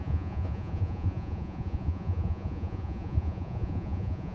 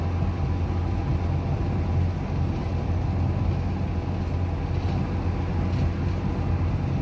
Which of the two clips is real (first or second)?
second